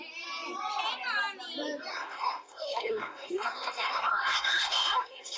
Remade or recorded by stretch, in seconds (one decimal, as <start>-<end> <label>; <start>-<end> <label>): 0.0-1.9 recorded; 1.9-5.4 remade